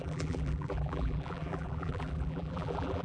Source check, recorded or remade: remade